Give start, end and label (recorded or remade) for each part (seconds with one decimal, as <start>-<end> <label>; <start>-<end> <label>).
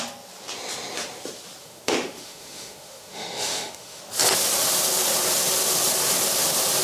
0.0-1.6 recorded; 1.6-4.0 remade; 4.0-6.8 recorded